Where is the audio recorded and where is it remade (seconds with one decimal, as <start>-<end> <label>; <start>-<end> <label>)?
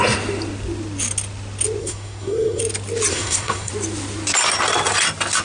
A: 0.0-1.8 recorded; 1.8-2.6 remade; 2.6-3.1 recorded; 3.1-3.7 remade; 3.7-5.4 recorded